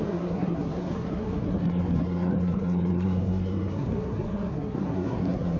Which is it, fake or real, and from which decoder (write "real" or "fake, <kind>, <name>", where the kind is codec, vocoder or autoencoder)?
fake, codec, SNAC